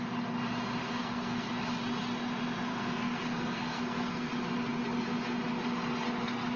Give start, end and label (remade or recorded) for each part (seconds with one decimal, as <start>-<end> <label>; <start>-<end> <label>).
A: 0.0-0.8 recorded; 0.8-1.5 remade; 1.5-2.7 recorded; 2.7-4.3 remade; 4.3-6.6 recorded